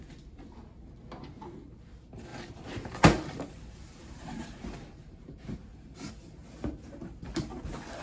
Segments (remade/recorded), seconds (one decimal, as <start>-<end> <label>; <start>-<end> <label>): 0.0-2.3 recorded; 2.3-6.1 remade; 6.1-8.0 recorded